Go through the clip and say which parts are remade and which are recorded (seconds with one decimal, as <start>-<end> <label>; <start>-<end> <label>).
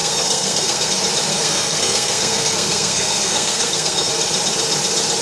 0.0-0.9 remade; 0.9-1.3 recorded; 1.3-4.1 remade; 4.1-5.2 recorded